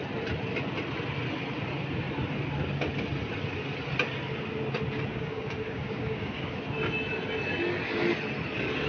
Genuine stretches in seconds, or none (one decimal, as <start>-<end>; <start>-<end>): 0.0-5.1; 6.6-8.9